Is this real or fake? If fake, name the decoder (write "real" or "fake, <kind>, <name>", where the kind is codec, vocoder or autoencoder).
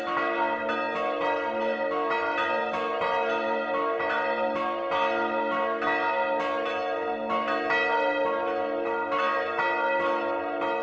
real